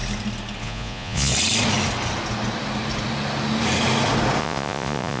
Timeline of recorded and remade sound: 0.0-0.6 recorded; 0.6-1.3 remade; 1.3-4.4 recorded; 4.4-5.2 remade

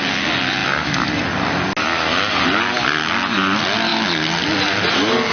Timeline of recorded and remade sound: 0.0-5.3 recorded

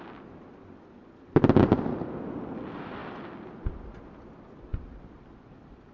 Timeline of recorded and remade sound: 0.0-5.9 recorded

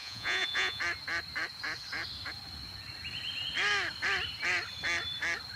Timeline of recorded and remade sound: 0.0-0.8 remade; 0.8-5.6 recorded

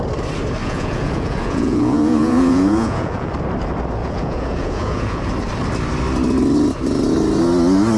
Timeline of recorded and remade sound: 0.0-0.6 recorded; 0.6-3.3 remade; 3.3-4.0 recorded; 4.0-5.2 remade; 5.2-8.0 recorded

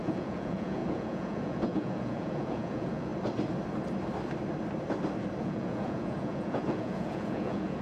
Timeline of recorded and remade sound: 0.0-3.1 remade; 3.1-5.4 recorded; 5.4-7.8 remade